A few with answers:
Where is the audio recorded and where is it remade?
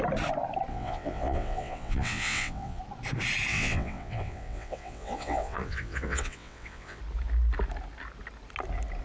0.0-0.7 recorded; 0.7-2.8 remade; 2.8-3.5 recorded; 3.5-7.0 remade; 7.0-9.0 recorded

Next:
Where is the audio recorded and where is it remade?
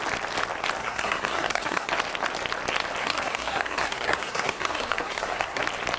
0.0-0.8 recorded; 0.8-1.9 remade; 1.9-3.0 recorded; 3.0-5.6 remade; 5.6-6.0 recorded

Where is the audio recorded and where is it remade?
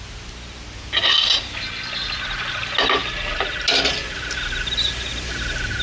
0.0-5.8 recorded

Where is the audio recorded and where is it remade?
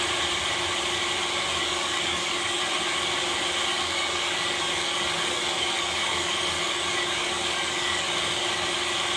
0.0-1.6 recorded; 1.6-2.6 remade; 2.6-3.7 recorded; 3.7-8.7 remade; 8.7-9.2 recorded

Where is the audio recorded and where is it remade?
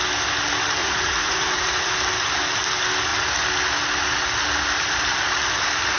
0.0-0.8 recorded; 0.8-1.9 remade; 1.9-6.0 recorded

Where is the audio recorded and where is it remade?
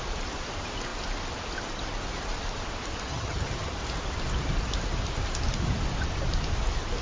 0.0-3.1 recorded; 3.1-3.7 remade; 3.7-7.0 recorded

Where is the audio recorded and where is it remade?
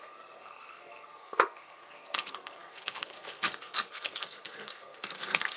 0.0-5.6 remade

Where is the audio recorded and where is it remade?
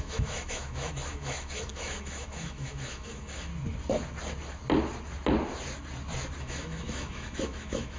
0.0-3.5 remade; 3.5-6.4 recorded; 6.4-8.0 remade